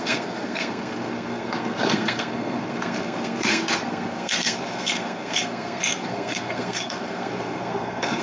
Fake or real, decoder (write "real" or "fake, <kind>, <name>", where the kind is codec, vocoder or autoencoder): fake, codec, SNAC